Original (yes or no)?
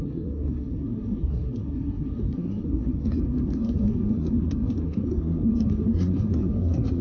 no